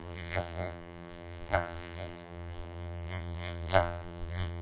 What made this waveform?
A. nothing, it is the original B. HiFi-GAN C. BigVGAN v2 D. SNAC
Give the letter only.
C